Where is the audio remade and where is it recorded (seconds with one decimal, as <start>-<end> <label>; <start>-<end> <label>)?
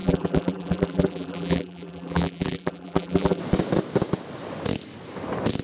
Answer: 0.0-3.4 remade; 3.4-5.6 recorded